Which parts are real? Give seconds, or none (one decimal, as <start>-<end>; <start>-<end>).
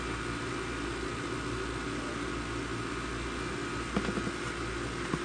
0.0-5.2